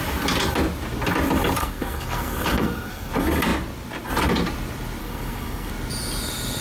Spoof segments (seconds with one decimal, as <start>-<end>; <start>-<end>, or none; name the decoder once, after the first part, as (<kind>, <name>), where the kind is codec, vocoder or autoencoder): 1.6-3.1 (codec, SNAC); 5.0-5.7